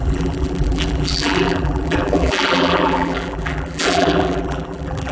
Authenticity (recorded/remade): remade